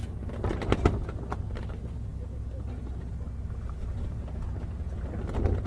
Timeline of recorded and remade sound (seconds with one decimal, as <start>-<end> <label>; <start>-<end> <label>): 0.0-5.7 recorded